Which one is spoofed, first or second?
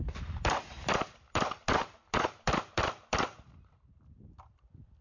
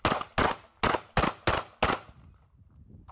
first